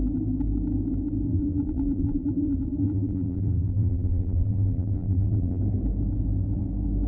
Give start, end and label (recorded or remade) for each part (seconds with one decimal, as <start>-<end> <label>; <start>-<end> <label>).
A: 0.0-1.3 recorded; 1.3-5.6 remade; 5.6-7.1 recorded